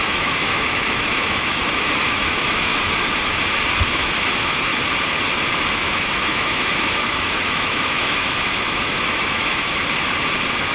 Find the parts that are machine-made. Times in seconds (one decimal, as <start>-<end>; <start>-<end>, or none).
0.0-2.7; 3.9-4.7; 5.8-9.8